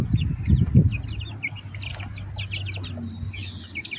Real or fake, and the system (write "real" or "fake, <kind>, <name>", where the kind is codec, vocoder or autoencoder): real